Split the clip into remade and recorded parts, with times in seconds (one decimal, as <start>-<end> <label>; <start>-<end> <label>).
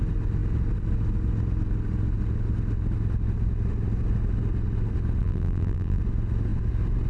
0.0-5.2 recorded; 5.2-6.0 remade; 6.0-7.1 recorded